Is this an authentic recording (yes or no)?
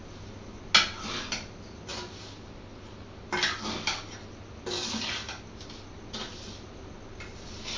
yes